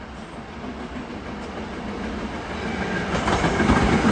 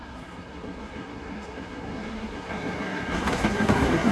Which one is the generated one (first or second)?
second